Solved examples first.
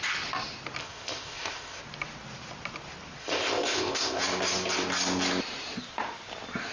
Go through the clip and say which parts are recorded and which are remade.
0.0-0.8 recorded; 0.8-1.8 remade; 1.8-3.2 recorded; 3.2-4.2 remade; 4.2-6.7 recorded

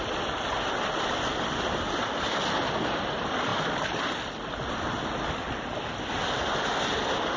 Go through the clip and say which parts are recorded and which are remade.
0.0-7.4 recorded

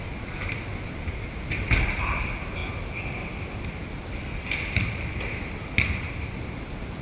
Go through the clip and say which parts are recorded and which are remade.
0.0-7.0 recorded

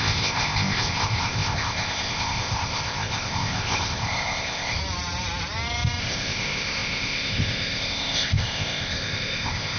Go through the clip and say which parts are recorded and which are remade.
0.0-4.8 remade; 4.8-6.0 recorded; 6.0-9.8 remade

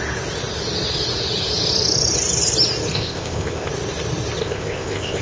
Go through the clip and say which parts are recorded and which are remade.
0.0-2.9 recorded; 2.9-3.7 remade; 3.7-4.4 recorded; 4.4-5.2 remade

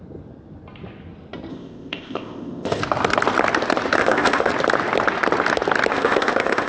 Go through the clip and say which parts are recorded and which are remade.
0.0-1.5 recorded; 1.5-2.8 remade; 2.8-4.0 recorded; 4.0-4.5 remade; 4.5-5.9 recorded; 5.9-6.7 remade

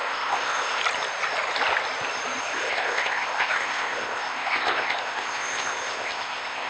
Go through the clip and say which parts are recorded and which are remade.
0.0-0.8 remade; 0.8-2.4 recorded; 2.4-6.7 remade